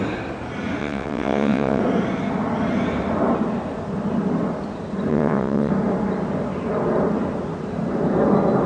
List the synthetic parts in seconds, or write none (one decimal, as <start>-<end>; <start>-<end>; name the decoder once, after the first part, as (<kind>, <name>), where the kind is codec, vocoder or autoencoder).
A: 0.8-1.8 (vocoder, WaveNeXt); 5.1-5.7